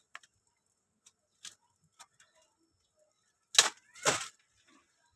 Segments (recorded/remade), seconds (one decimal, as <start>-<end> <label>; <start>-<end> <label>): 0.0-5.2 recorded